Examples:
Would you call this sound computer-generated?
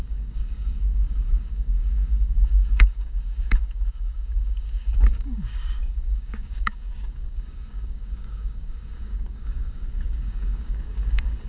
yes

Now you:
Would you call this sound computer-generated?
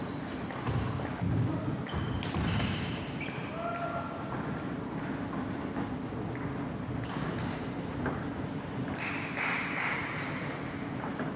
no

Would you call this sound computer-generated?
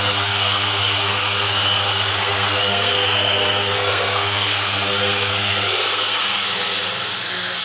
yes